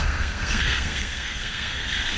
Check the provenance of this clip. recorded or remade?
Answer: remade